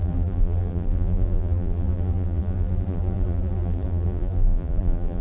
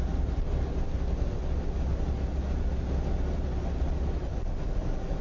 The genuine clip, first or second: second